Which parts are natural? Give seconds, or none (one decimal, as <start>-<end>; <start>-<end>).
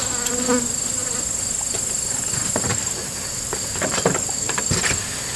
0.0-2.7; 4.7-5.4